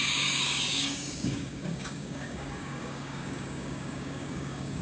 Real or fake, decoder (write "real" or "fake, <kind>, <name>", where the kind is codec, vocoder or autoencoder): fake, codec, DAC